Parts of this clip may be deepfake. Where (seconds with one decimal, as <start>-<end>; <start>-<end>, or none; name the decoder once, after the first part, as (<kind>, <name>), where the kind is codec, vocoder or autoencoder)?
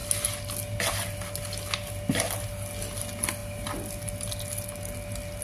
none